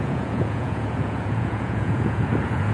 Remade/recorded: remade